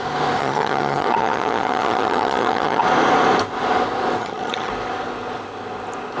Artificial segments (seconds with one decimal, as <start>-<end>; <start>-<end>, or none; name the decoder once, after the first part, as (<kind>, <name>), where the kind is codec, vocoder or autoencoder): 0.4-2.8 (vocoder, HiFi-GAN); 4.2-4.7